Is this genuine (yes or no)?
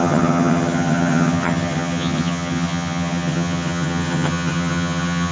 no